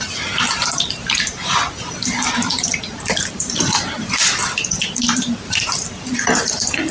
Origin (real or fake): fake